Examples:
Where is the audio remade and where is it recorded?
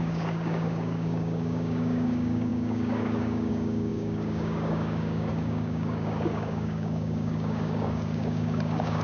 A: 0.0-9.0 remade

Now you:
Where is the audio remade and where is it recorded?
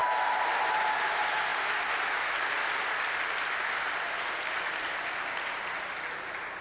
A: 0.0-6.6 recorded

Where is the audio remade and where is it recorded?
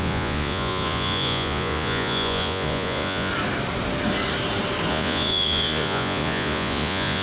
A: 0.0-3.3 remade; 3.3-4.9 recorded; 4.9-7.2 remade